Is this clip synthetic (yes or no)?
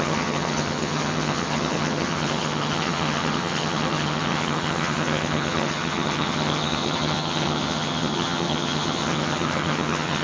yes